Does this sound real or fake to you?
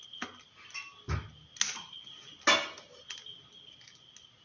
real